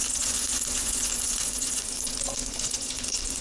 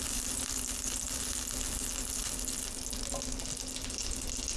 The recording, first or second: second